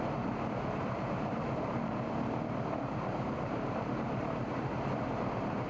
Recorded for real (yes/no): no